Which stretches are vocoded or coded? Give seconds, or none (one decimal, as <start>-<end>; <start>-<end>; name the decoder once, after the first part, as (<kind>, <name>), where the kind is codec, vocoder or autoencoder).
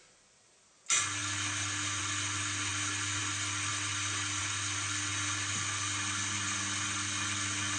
none